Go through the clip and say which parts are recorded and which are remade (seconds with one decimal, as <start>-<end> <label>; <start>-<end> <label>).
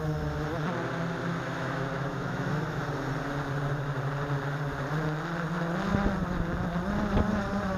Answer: 0.0-1.3 recorded; 1.3-2.8 remade; 2.8-7.8 recorded